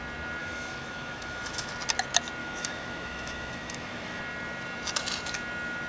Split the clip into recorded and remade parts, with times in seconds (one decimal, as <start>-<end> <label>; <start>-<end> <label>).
0.0-0.4 recorded; 0.4-1.7 remade; 1.7-2.4 recorded; 2.4-4.2 remade; 4.2-5.9 recorded